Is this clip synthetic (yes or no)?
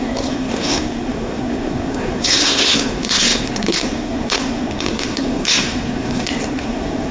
yes